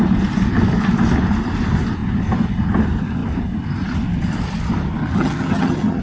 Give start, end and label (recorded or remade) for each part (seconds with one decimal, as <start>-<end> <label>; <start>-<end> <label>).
0.0-5.0 recorded; 5.0-6.0 remade